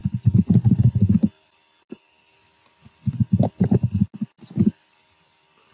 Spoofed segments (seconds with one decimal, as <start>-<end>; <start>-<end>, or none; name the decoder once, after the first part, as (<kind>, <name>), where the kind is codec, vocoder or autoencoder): none